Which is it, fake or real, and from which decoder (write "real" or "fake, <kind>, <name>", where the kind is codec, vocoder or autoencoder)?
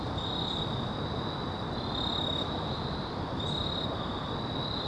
real